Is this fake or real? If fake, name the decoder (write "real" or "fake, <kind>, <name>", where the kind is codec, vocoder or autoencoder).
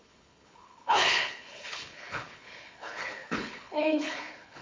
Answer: fake, codec, HILCodec